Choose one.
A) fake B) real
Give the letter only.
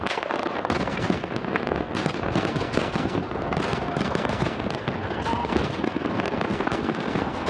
A